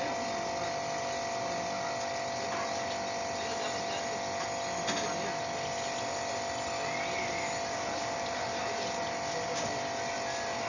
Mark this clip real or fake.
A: real